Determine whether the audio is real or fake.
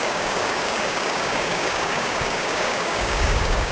fake